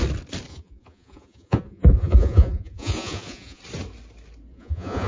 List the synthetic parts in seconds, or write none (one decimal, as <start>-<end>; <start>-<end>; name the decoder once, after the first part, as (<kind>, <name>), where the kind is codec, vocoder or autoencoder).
0.5-3.6 (vocoder, Vocos); 4.5-5.1

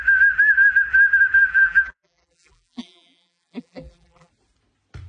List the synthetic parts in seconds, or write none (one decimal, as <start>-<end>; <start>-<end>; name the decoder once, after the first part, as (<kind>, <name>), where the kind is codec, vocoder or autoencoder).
1.5-4.3 (vocoder, BigVGAN v2)